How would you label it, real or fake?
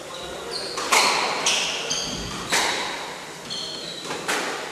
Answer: real